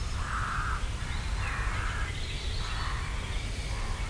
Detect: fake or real real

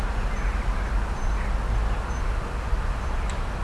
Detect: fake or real real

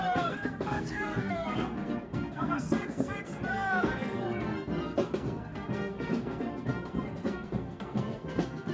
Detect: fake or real fake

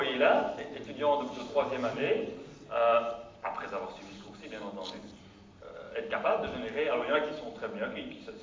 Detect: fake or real real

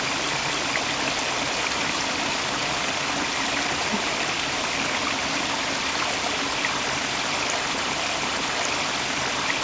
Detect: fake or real real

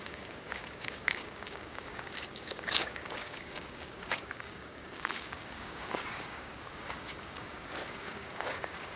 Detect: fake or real fake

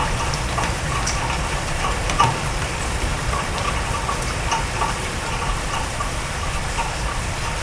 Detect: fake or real fake